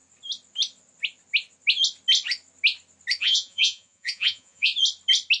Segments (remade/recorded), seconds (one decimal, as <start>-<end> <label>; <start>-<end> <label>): 0.0-3.2 recorded; 3.2-4.7 remade; 4.7-5.4 recorded